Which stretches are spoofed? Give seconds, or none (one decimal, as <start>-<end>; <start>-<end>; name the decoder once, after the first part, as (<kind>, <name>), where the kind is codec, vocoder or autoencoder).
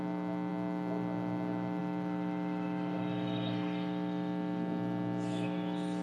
none